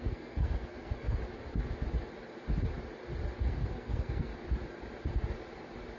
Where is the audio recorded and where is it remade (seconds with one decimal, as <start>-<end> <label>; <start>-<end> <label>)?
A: 0.0-1.2 remade; 1.2-3.4 recorded; 3.4-4.3 remade; 4.3-6.0 recorded